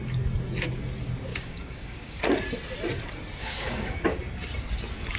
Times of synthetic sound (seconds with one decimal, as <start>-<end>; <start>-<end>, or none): 1.3-2.2; 3.4-3.9